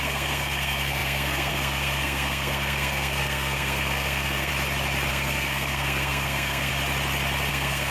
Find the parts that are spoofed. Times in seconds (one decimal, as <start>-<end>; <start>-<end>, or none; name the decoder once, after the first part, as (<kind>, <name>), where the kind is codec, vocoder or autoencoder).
0.0-4.5 (codec, SNAC); 5.1-6.7; 7.5-7.9